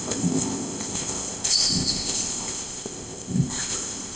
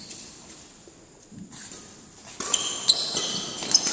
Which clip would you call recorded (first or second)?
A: second